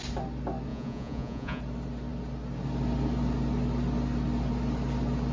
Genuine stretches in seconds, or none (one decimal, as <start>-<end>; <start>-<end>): 0.0-0.7; 1.6-5.3